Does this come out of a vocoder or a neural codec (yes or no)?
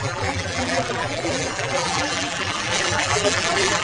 yes